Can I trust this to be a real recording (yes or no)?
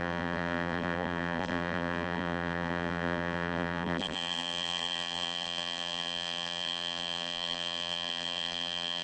no